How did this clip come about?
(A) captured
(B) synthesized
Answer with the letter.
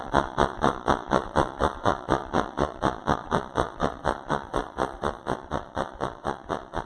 B